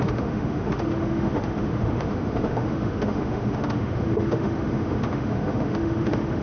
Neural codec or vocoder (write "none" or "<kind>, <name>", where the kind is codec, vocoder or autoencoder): autoencoder, DAC-VAE